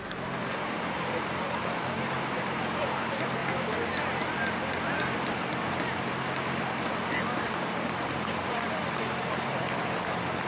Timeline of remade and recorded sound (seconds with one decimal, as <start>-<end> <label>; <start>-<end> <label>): 0.0-3.4 remade; 3.4-6.6 recorded; 6.6-10.5 remade